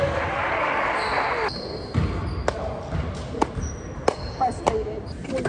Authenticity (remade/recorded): recorded